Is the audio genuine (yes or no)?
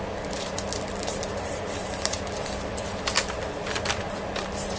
no